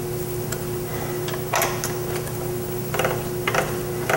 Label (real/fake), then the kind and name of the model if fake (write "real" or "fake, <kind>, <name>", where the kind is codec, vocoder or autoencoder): real